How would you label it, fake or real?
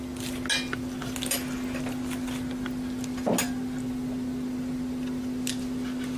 real